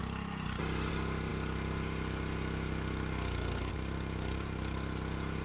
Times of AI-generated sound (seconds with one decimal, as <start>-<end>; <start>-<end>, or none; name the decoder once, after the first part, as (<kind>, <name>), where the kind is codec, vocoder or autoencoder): none